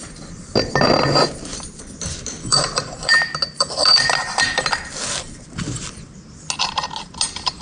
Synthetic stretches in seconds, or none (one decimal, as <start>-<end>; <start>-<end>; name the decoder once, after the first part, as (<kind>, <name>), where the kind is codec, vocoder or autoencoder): 1.5-6.1 (vocoder, BigVGAN v2)